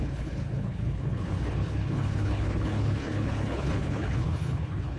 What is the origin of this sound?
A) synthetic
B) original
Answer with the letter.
A